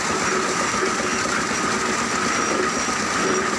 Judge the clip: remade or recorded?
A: recorded